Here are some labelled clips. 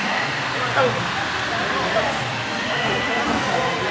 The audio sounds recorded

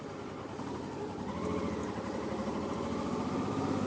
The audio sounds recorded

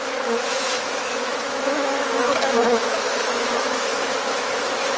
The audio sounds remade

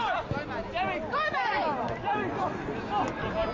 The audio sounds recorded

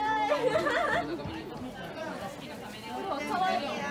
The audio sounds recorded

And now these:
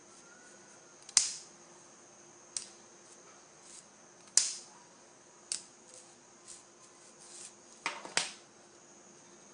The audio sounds recorded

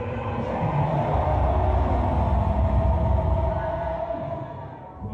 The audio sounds recorded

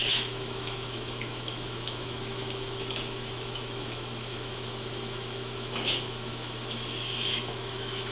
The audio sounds remade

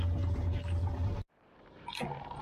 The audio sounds recorded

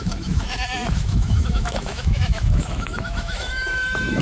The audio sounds remade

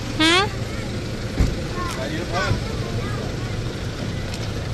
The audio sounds recorded